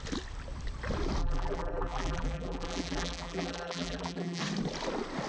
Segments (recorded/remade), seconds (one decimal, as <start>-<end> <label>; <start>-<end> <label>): 0.0-1.2 recorded; 1.2-4.4 remade; 4.4-5.3 recorded